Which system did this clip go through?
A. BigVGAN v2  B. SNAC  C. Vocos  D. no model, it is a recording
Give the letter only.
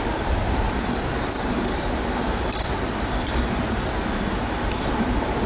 D